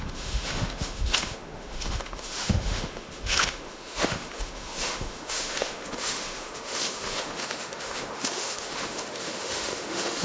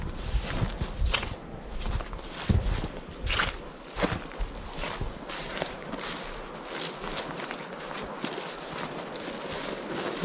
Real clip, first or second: second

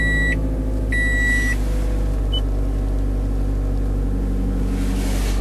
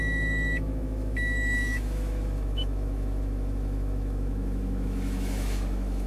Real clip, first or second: first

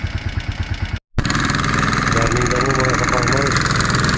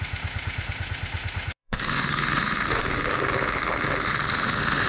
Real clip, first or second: first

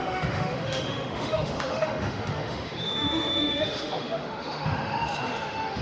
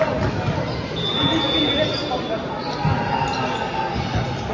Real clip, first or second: second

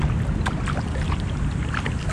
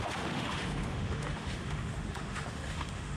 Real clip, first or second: first